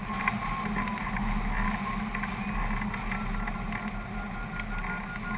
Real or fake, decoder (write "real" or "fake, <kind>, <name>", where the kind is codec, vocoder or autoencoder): real